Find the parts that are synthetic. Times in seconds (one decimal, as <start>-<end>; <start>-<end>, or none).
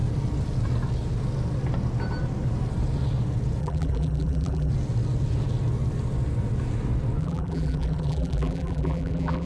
3.6-4.7; 7.2-9.5